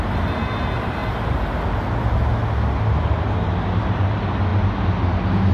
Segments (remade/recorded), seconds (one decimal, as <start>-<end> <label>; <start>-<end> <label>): 0.0-5.5 recorded